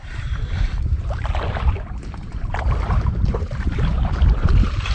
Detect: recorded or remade remade